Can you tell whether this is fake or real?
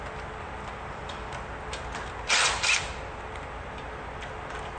real